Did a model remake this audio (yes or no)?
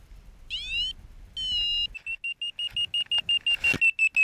no